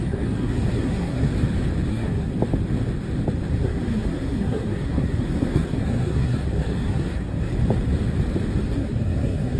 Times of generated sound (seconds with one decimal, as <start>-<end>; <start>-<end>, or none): 0.0-1.3; 1.9-2.3; 3.5-7.5; 8.6-9.6